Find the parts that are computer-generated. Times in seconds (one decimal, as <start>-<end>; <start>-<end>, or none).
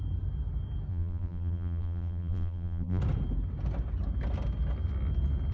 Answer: 0.9-3.0